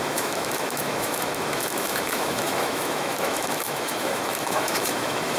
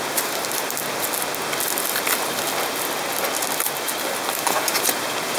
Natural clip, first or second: second